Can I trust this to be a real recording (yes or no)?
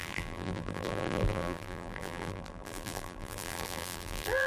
no